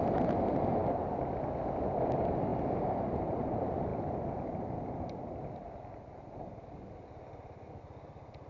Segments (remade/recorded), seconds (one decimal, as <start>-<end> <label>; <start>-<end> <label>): 0.0-2.5 remade; 2.5-3.1 recorded; 3.1-8.5 remade

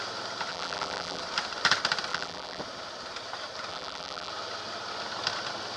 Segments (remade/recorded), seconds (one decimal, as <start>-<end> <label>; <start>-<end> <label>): 0.0-0.5 recorded; 0.5-1.2 remade; 1.2-2.1 recorded; 2.1-2.6 remade; 2.6-3.7 recorded; 3.7-4.3 remade; 4.3-5.8 recorded

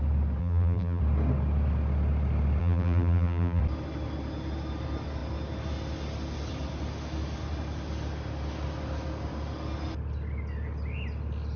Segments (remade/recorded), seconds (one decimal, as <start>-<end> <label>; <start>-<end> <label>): 0.0-0.4 recorded; 0.4-1.0 remade; 1.0-2.6 recorded; 2.6-3.6 remade; 3.6-11.6 recorded

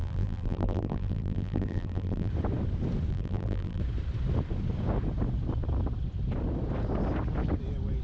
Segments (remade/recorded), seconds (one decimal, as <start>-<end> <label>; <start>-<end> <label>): 0.0-2.3 remade; 2.3-3.1 recorded; 3.1-3.8 remade; 3.8-8.0 recorded

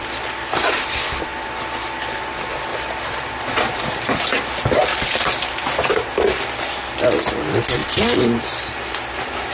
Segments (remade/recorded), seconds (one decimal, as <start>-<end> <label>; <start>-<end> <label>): 0.0-2.7 recorded; 2.7-3.4 remade; 3.4-4.8 recorded; 4.8-5.6 remade; 5.6-7.8 recorded; 7.8-9.0 remade; 9.0-9.5 recorded

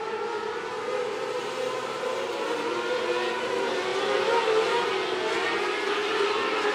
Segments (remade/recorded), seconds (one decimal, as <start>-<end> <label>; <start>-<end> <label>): 0.0-6.7 recorded

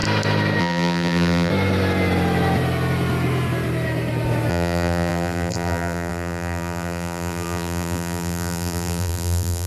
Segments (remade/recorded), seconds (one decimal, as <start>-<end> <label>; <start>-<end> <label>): 0.0-0.6 recorded; 0.6-1.5 remade; 1.5-4.5 recorded; 4.5-9.7 remade

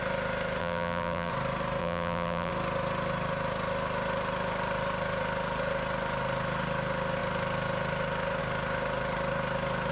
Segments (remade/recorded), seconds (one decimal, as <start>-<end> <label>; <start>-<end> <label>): 0.0-0.6 recorded; 0.6-1.3 remade; 1.3-1.8 recorded; 1.8-2.5 remade; 2.5-9.9 recorded